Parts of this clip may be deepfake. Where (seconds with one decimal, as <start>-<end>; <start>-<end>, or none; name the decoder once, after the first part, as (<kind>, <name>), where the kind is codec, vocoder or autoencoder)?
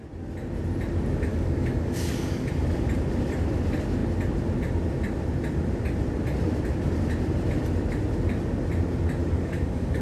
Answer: 1.3-2.5 (codec, DAC); 9.2-10.0